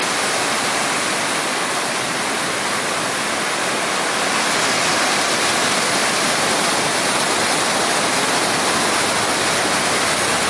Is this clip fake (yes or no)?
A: no